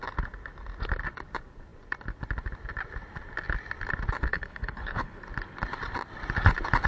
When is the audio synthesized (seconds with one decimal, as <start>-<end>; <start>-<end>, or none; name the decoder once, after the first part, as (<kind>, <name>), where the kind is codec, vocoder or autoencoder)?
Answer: 4.3-5.2 (codec, HILCodec)